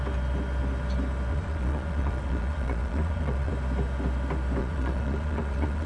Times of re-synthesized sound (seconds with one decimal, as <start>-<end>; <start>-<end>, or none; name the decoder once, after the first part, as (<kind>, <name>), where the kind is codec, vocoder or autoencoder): 1.3-3.5 (vocoder, Vocos); 4.6-5.9

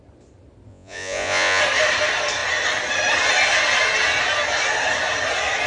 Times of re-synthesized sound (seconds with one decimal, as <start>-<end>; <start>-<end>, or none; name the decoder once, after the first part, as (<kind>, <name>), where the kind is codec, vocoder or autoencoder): 0.7-1.6 (vocoder, Vocos)

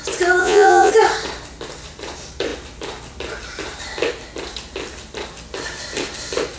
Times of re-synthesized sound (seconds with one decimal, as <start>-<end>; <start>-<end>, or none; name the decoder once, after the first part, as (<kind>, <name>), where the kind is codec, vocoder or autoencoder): 0.4-0.9 (vocoder, Vocos)